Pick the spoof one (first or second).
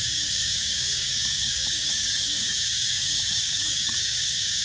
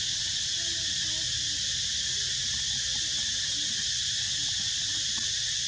first